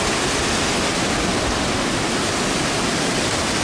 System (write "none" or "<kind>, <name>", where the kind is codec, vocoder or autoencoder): none